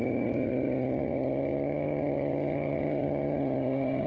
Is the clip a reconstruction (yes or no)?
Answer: yes